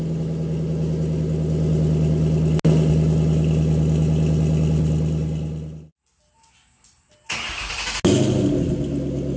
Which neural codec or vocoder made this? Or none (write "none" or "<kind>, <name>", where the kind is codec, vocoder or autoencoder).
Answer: none